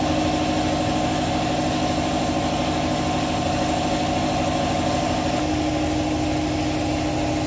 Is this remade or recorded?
recorded